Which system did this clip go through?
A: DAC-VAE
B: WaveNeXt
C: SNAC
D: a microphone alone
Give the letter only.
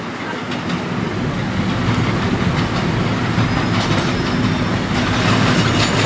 D